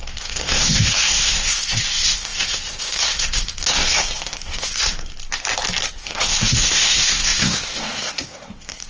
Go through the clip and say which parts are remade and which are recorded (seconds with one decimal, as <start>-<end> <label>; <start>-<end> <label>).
0.0-5.1 remade; 5.1-5.9 recorded; 5.9-8.9 remade